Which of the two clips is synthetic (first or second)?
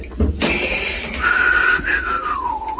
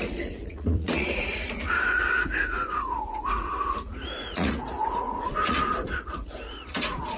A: second